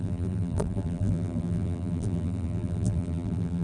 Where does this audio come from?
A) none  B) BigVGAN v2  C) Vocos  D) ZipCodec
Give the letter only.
B